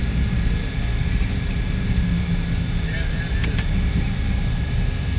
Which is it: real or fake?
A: real